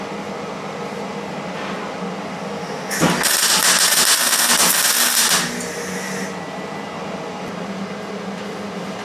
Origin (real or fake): real